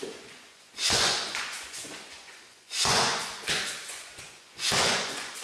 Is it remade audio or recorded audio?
remade